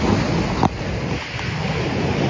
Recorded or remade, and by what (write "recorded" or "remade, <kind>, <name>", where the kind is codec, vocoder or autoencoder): recorded